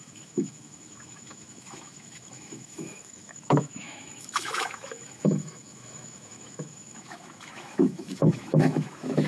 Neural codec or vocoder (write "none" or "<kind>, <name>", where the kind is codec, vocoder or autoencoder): autoencoder, DAC-VAE